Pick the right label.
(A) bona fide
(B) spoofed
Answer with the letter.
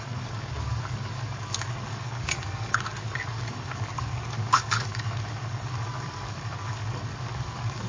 B